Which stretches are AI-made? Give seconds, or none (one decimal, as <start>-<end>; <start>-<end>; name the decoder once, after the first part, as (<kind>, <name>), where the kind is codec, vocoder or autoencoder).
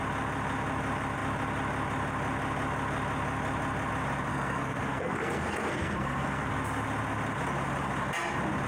4.3-6.5 (codec, SNAC)